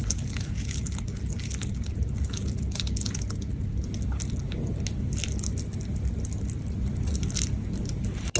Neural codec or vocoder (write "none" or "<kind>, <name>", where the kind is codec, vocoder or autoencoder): none